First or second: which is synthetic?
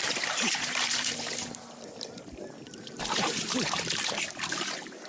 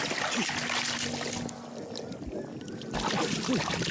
first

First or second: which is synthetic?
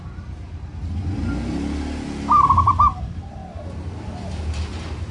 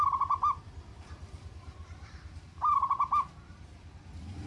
second